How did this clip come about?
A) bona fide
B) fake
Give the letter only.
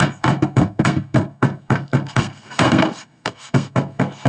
B